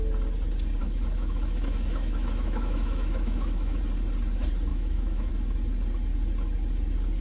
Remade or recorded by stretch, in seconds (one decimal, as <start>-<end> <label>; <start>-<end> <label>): 0.0-0.8 recorded; 0.8-3.8 remade; 3.8-4.7 recorded; 4.7-5.3 remade; 5.3-7.2 recorded